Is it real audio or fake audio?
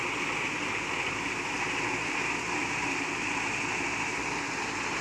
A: real